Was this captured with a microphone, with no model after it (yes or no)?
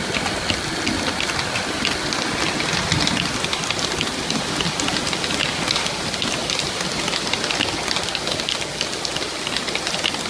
yes